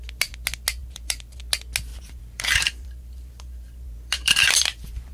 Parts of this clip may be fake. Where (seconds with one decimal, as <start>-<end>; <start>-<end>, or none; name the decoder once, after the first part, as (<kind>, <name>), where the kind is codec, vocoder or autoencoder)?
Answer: 0.8-1.4 (vocoder, BigVGAN v2); 1.9-5.1